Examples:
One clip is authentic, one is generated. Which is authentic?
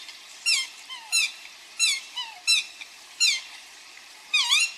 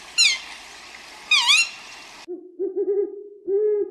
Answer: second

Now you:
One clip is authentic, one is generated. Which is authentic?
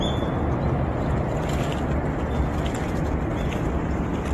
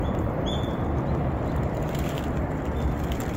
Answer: first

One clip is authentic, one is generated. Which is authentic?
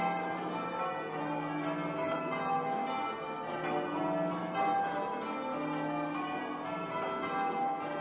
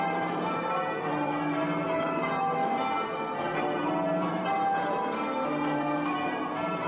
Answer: first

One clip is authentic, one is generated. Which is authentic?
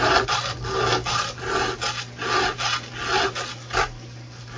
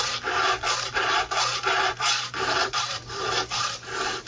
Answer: first